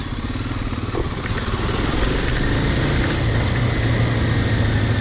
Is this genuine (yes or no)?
yes